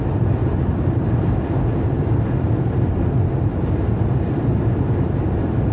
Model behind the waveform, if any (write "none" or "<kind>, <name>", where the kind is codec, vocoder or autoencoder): none